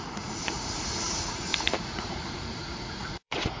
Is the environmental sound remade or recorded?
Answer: remade